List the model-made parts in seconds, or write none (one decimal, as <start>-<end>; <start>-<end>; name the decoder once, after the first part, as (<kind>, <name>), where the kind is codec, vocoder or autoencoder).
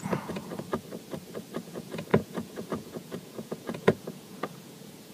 0.0-0.4 (vocoder, Vocos); 1.6-5.1